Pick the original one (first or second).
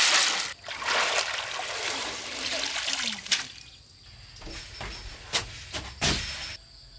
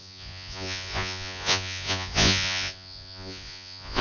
first